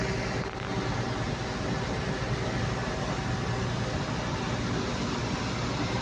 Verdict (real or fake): real